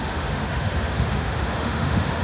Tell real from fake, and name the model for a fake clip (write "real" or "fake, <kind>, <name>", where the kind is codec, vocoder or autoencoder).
fake, autoencoder, DAC-VAE